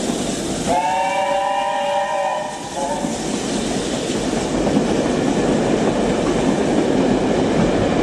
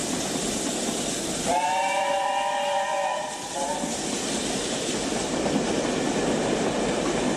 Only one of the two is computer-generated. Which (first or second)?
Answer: second